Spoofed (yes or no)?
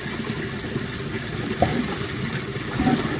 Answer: no